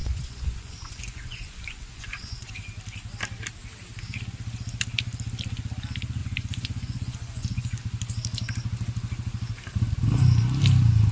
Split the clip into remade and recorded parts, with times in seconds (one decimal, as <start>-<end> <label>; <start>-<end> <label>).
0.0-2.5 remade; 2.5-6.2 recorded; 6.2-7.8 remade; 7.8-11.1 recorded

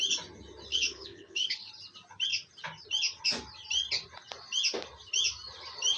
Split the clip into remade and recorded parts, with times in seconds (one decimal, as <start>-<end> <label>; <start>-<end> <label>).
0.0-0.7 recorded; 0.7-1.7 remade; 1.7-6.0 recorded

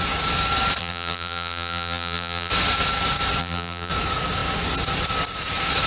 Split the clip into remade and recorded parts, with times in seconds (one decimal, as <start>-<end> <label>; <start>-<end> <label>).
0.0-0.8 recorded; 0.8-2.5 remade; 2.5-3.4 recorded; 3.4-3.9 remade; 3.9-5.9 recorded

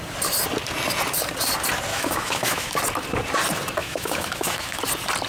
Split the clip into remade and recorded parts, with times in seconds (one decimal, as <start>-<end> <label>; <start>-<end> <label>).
0.0-1.9 recorded; 1.9-2.8 remade; 2.8-3.8 recorded; 3.8-4.8 remade; 4.8-5.3 recorded

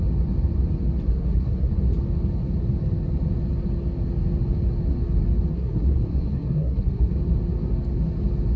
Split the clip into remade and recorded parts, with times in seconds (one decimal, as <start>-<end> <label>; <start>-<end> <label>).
0.0-1.1 recorded; 1.1-1.7 remade; 1.7-5.5 recorded; 5.5-7.1 remade; 7.1-8.6 recorded